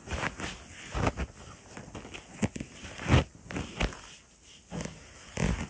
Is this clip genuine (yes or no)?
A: yes